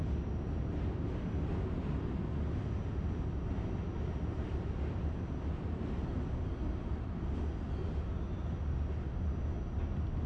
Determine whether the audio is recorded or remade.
recorded